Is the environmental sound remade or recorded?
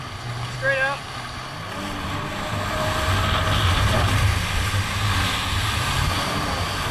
recorded